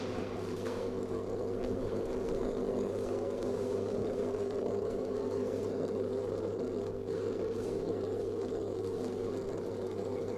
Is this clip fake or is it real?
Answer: fake